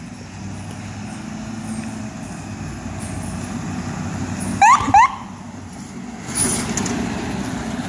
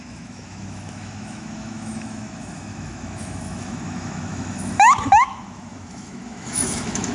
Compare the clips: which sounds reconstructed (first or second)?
second